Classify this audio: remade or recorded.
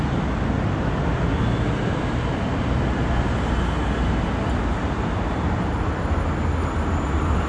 recorded